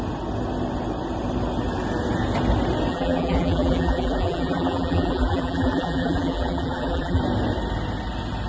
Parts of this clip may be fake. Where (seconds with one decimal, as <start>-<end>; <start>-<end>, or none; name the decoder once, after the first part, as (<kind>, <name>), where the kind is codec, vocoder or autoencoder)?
2.9-7.2 (vocoder, BigVGAN v2)